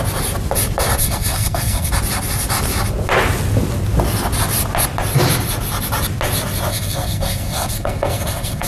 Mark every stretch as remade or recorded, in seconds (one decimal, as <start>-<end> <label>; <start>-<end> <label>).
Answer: 0.0-1.0 recorded; 1.0-1.9 remade; 1.9-6.7 recorded; 6.7-8.7 remade